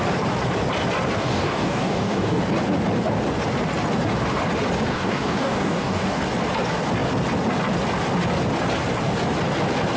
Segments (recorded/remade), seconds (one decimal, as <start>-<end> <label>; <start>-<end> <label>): 0.0-1.2 recorded; 1.2-2.4 remade; 2.4-4.9 recorded; 4.9-6.2 remade; 6.2-10.0 recorded